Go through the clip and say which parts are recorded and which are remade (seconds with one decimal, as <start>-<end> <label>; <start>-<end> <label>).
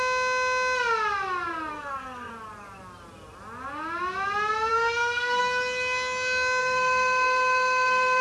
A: 0.0-1.7 recorded; 1.7-2.3 remade; 2.3-4.7 recorded; 4.7-5.4 remade; 5.4-6.6 recorded; 6.6-8.2 remade